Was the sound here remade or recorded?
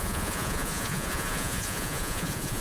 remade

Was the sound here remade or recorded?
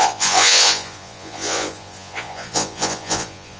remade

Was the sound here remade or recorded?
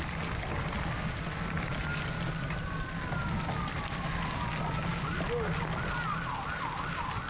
recorded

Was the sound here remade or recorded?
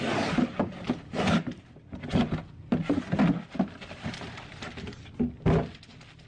recorded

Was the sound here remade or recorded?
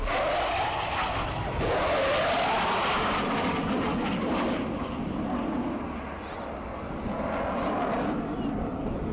recorded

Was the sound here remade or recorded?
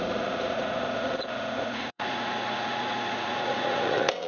remade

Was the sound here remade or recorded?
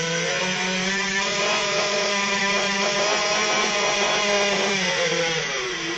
remade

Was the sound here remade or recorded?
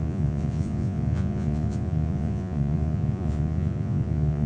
remade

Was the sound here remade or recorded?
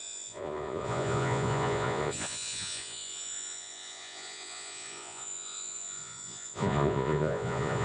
remade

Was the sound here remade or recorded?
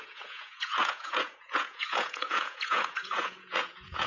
remade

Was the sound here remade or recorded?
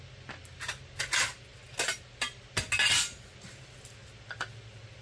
recorded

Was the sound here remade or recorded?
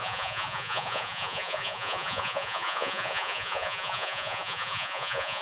remade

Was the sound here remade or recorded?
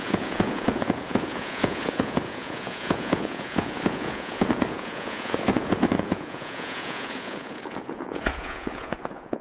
remade